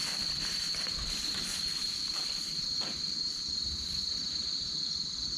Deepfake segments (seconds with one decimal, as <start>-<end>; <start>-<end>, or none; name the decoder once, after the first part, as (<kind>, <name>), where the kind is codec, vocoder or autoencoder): 1.5-4.7 (vocoder, BigVGAN v2)